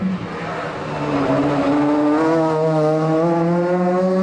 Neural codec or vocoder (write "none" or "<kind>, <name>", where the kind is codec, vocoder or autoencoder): none